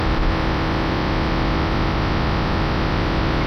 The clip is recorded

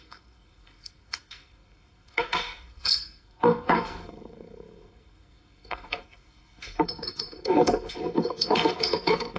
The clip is remade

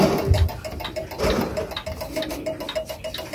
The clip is recorded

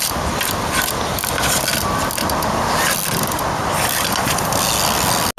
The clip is recorded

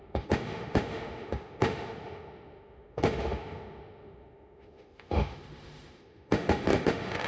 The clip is remade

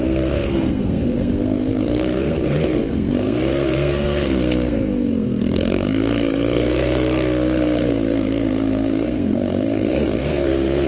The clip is remade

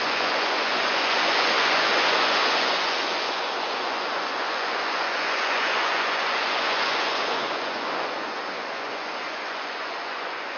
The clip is remade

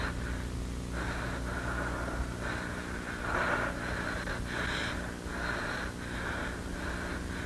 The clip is recorded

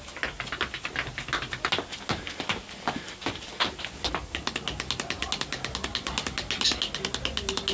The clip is recorded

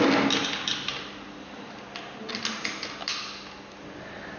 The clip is recorded